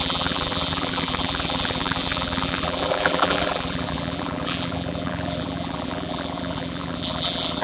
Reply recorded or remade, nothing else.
remade